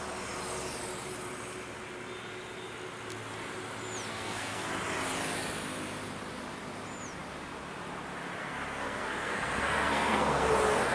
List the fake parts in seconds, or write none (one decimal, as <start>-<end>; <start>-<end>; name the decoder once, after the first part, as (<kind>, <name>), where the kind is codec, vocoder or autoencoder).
4.1-4.7 (codec, SNAC); 8.4-10.5